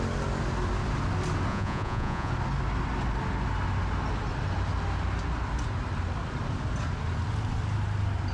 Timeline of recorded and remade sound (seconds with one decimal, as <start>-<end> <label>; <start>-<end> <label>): 0.0-1.5 recorded; 1.5-2.3 remade; 2.3-8.3 recorded

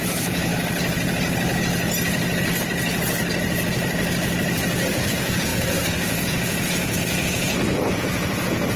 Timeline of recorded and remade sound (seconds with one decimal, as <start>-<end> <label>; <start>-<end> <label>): 0.0-0.5 remade; 0.5-5.1 recorded; 5.1-8.8 remade

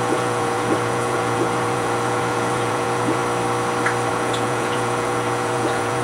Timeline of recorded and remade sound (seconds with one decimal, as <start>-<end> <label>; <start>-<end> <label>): 0.0-3.2 remade; 3.2-4.1 recorded; 4.1-6.0 remade

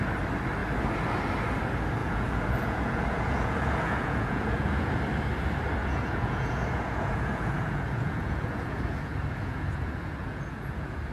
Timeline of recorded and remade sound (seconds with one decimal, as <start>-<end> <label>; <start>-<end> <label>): 0.0-2.0 recorded; 2.0-5.0 remade; 5.0-5.8 recorded; 5.8-11.1 remade